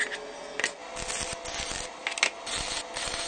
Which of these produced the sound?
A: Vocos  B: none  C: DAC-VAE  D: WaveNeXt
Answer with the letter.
B